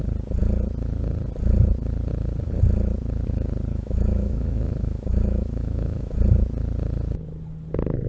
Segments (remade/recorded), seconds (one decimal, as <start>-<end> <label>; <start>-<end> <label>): 0.0-3.7 recorded; 3.7-6.2 remade; 6.2-8.1 recorded